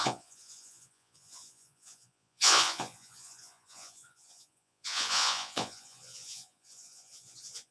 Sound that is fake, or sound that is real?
fake